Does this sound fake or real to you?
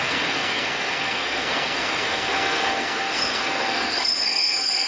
fake